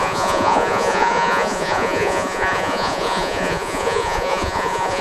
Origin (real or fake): fake